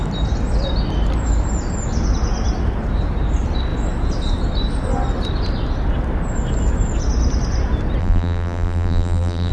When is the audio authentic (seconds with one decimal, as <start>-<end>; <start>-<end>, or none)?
0.0-8.0